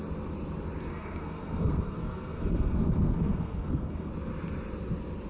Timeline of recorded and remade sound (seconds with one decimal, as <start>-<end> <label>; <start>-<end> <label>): 0.0-0.9 recorded; 0.9-4.1 remade; 4.1-5.3 recorded